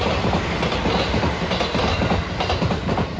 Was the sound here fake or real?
real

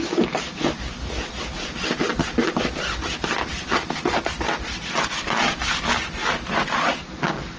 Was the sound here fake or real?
real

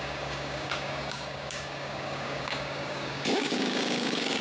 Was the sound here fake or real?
fake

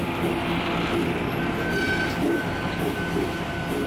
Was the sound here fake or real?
real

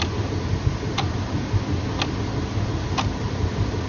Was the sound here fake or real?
real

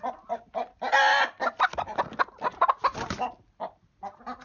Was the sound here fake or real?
real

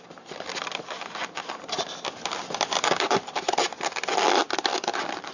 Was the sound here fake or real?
real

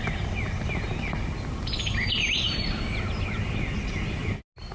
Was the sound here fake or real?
real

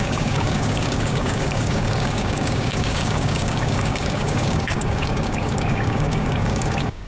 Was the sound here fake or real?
fake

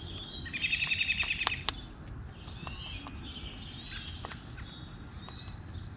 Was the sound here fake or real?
real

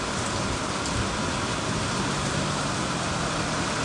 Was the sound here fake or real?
real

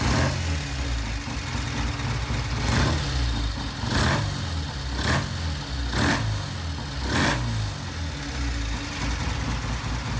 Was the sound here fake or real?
real